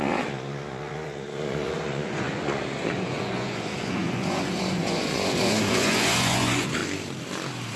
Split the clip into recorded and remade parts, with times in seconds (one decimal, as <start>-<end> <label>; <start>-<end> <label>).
0.0-6.8 remade; 6.8-7.8 recorded